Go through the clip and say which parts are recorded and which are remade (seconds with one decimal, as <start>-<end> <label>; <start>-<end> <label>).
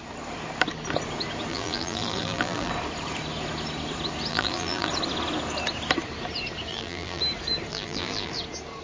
0.0-1.5 recorded; 1.5-2.7 remade; 2.7-4.3 recorded; 4.3-4.9 remade; 4.9-6.7 recorded; 6.7-7.2 remade; 7.2-7.7 recorded; 7.7-8.3 remade; 8.3-8.8 recorded